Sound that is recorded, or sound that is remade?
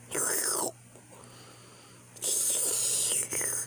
recorded